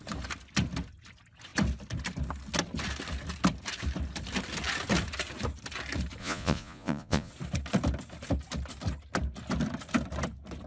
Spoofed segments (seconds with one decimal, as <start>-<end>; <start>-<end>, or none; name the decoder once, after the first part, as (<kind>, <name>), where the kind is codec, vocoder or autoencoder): 6.2-7.3 (vocoder, Vocos)